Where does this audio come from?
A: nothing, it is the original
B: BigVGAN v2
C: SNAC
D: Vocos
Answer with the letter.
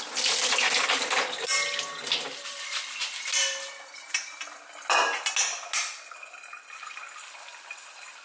A